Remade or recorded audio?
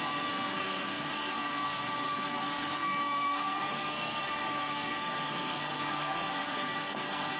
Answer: remade